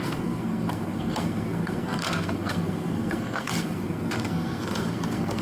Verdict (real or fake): fake